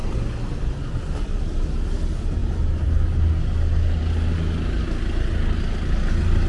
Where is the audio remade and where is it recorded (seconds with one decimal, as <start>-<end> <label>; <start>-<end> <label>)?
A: 0.0-6.5 recorded